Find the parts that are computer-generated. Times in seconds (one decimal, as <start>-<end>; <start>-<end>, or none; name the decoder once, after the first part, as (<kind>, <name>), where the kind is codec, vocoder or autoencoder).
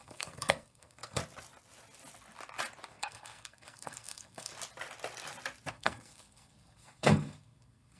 0.0-1.2 (codec, SNAC); 2.9-4.5; 5.7-8.0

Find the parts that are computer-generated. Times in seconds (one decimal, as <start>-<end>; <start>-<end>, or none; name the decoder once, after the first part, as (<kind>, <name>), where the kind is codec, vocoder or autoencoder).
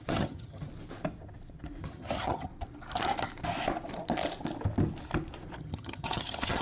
0.0-0.7 (vocoder, HiFi-GAN); 1.8-2.5; 5.6-6.6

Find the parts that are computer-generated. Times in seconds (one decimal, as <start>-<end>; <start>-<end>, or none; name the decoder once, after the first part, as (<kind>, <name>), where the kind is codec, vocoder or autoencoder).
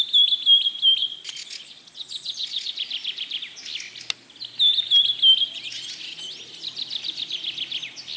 1.0-2.7 (vocoder, Vocos)